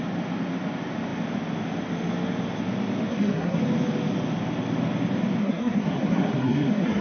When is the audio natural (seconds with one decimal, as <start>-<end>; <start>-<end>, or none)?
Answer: 0.0-3.1; 3.6-5.4